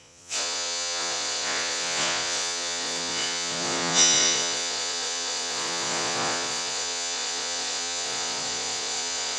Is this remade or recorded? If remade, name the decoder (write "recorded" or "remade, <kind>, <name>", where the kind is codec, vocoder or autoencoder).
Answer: remade, vocoder, Vocos